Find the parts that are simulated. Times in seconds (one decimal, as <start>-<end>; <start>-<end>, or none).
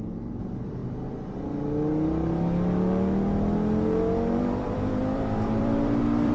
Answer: 0.0-0.8; 4.4-6.3